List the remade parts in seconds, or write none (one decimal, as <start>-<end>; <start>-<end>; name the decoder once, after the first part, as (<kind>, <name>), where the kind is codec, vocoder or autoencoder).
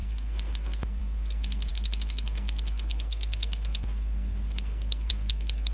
0.0-5.7 (codec, SNAC)